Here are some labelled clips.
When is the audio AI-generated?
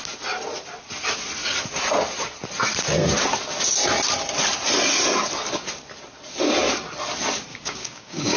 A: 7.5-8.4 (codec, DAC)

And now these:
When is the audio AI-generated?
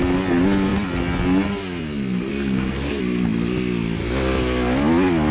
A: 2.3-3.0 (codec, SNAC)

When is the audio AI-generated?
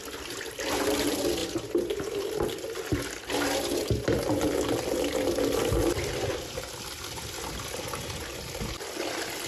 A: none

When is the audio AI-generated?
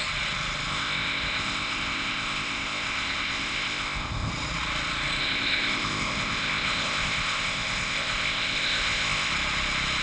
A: 0.7-4.3 (codec, ZipCodec); 5.2-9.3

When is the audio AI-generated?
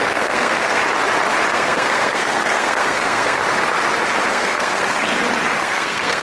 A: 0.0-0.8 (codec, SNAC); 1.5-3.4; 4.3-5.0; 5.6-6.2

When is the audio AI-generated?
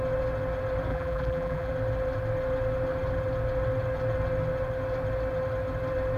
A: 0.9-1.7 (vocoder, BigVGAN v2)